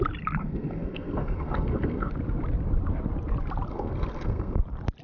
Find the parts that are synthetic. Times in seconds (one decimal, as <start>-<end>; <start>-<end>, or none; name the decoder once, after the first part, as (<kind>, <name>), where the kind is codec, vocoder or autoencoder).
0.4-2.1 (codec, SNAC); 3.7-4.6